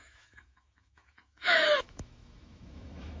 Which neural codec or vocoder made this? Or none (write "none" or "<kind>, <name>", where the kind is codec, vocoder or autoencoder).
autoencoder, DAC-VAE